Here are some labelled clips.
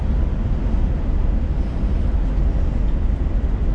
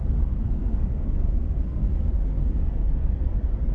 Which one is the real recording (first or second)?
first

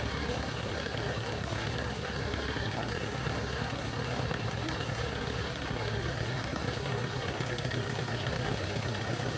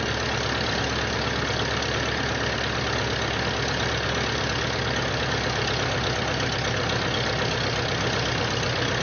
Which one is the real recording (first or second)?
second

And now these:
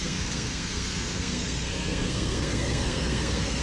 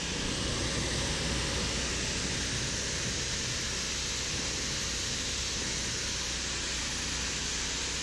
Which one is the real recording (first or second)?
second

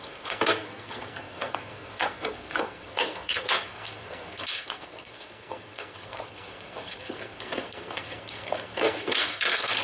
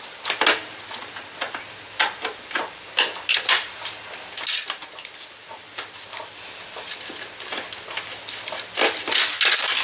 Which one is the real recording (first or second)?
second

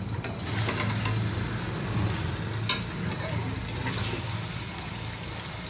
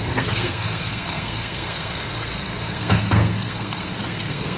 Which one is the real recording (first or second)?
first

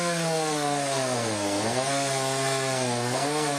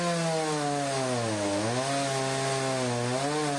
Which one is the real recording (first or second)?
second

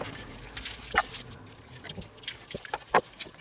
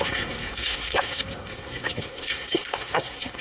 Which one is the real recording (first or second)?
first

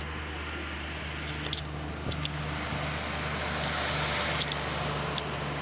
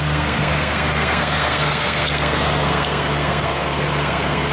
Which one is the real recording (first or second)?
first